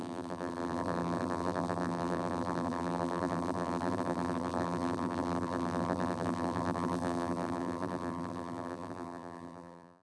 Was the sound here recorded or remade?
remade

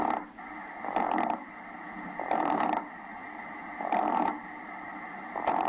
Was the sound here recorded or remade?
remade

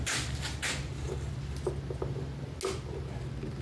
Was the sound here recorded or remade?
recorded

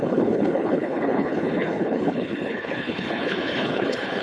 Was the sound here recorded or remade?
remade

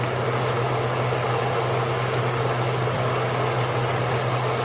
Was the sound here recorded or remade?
recorded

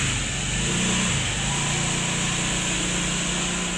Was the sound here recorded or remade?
recorded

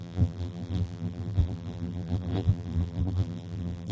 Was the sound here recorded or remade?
remade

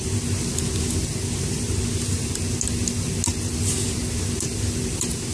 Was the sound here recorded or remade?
recorded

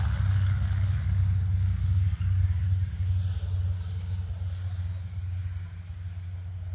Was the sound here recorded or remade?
recorded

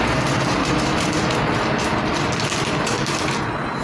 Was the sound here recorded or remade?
remade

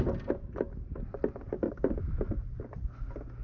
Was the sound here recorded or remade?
recorded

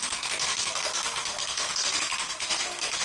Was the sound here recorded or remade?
remade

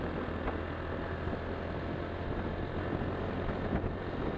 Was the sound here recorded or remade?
recorded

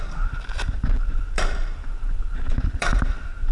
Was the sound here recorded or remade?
remade